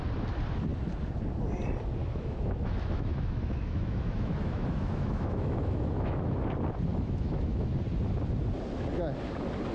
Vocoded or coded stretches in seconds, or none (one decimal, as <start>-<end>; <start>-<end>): 2.0-6.4; 6.9-7.7